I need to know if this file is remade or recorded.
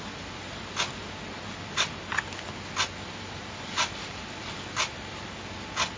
recorded